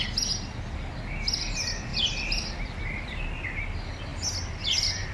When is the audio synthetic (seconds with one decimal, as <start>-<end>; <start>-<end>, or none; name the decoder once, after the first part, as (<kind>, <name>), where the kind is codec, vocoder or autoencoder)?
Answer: none